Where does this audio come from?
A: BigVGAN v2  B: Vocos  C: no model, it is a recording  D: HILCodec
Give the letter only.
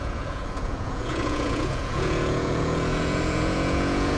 B